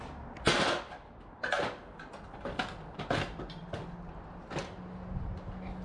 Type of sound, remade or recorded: recorded